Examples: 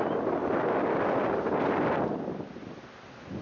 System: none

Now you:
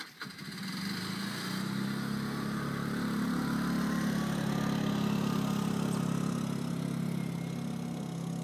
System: none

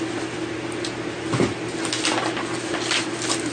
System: none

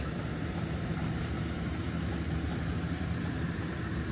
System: vocoder, BigVGAN v2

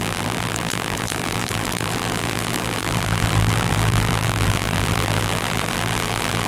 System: vocoder, BigVGAN v2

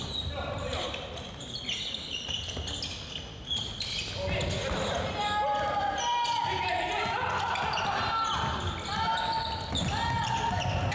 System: none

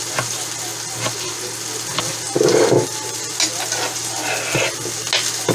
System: none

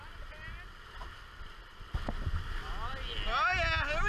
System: none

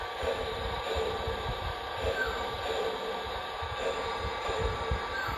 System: vocoder, BigVGAN v2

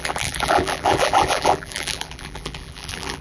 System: vocoder, BigVGAN v2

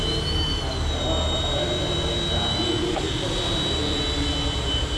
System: none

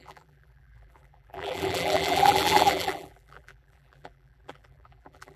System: vocoder, BigVGAN v2